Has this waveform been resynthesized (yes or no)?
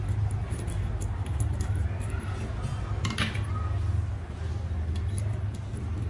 no